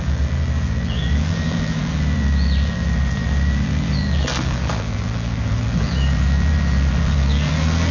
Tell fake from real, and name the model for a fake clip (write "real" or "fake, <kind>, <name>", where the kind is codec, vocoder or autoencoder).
fake, vocoder, BigVGAN v2